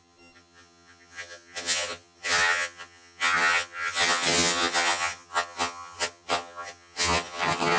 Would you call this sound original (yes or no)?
no